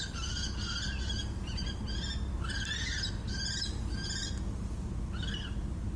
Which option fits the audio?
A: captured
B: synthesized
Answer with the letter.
A